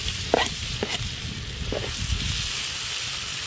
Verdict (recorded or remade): recorded